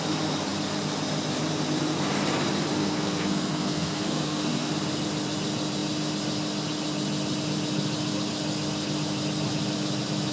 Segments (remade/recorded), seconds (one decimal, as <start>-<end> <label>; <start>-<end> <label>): 0.0-2.8 recorded; 2.8-4.7 remade; 4.7-10.3 recorded